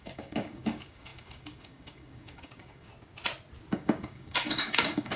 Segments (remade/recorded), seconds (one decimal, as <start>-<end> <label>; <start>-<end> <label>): 0.0-2.9 remade; 2.9-3.7 recorded; 3.7-5.2 remade